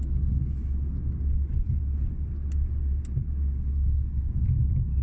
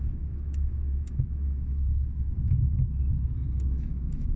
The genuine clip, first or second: first